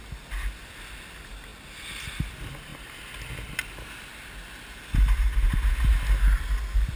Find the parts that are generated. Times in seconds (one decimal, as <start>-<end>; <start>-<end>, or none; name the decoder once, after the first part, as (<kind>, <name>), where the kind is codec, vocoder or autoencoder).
none